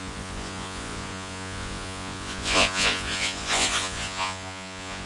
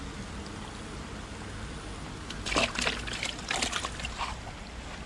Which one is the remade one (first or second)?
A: first